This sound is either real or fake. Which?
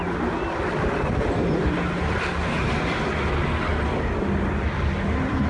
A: real